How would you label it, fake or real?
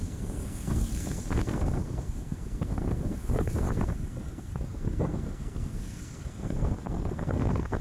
fake